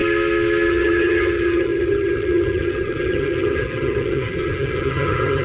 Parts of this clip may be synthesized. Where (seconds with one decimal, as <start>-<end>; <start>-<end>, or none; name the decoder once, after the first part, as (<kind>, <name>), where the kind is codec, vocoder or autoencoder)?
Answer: 0.7-5.4 (vocoder, HiFi-GAN)